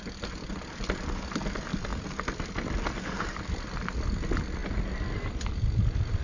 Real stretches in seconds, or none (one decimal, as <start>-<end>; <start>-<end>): 0.0-6.2